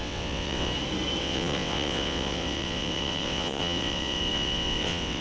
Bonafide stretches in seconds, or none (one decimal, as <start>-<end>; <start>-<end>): 0.7-1.2